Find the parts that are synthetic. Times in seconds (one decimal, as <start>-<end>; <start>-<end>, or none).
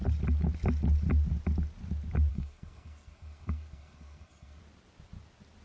2.3-4.6